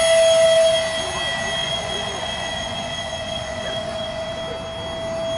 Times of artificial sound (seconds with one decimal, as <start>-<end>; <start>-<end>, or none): 1.6-4.4